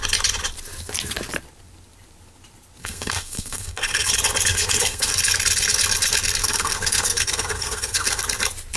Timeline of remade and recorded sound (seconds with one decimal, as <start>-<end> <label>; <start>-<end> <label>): 0.0-2.8 recorded; 2.8-4.1 remade; 4.1-4.5 recorded; 4.5-5.1 remade; 5.1-6.4 recorded; 6.4-8.2 remade; 8.2-8.8 recorded

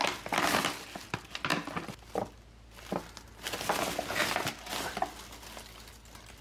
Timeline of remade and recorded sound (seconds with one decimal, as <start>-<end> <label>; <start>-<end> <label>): 0.0-6.4 recorded